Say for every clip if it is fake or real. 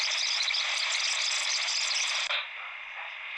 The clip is real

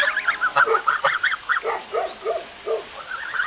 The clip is real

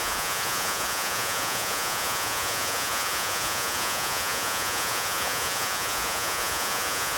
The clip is fake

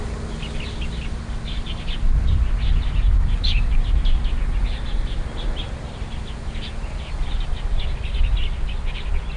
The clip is real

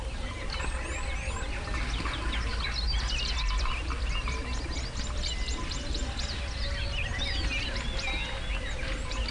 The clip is real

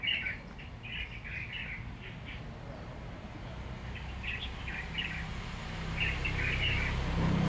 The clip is real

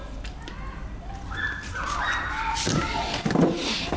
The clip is real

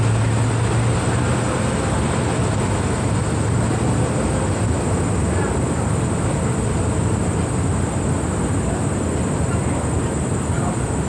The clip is real